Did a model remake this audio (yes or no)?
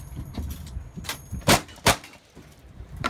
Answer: yes